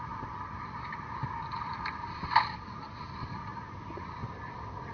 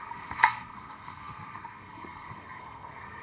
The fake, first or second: second